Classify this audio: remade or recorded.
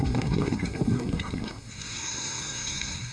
remade